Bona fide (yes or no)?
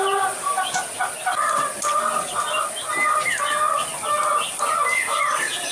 yes